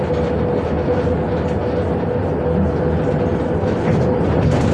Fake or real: real